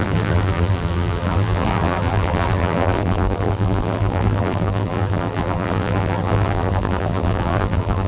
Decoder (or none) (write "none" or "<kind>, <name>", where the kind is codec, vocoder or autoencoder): vocoder, BigVGAN v2